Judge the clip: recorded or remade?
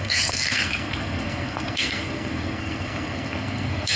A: remade